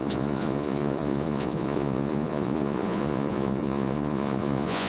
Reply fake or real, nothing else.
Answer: fake